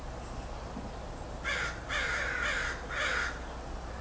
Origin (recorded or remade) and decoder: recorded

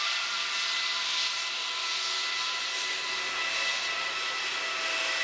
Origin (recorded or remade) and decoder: recorded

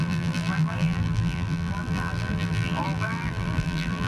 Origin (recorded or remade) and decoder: remade, vocoder, BigVGAN v2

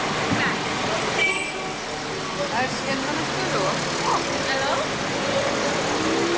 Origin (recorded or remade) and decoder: recorded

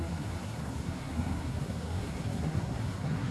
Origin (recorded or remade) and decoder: remade, codec, SNAC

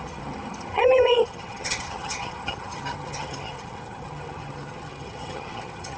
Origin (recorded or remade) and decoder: remade, vocoder, HiFi-GAN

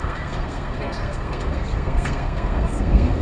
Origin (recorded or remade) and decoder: remade, codec, SNAC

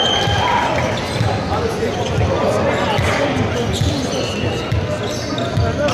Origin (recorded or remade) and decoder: recorded